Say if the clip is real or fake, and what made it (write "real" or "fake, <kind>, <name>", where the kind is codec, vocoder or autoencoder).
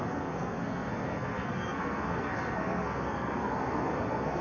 fake, codec, SNAC